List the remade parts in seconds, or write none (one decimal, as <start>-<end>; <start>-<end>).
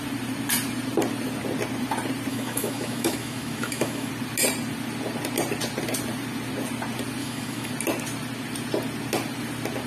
2.3-4.1; 7.2-7.7